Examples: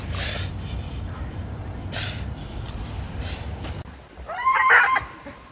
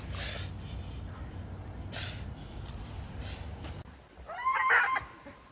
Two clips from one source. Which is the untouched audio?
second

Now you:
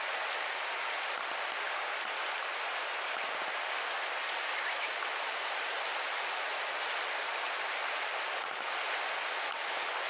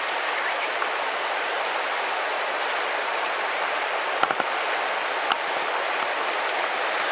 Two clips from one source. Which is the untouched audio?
first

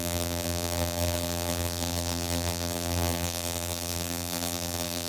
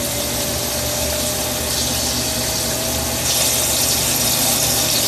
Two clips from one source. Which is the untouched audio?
second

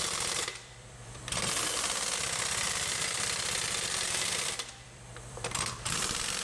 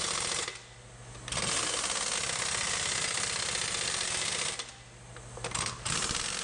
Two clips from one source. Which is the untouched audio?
second